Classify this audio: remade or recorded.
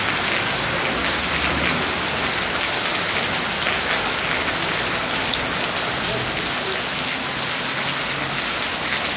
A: recorded